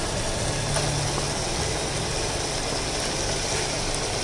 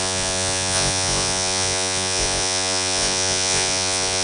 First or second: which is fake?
second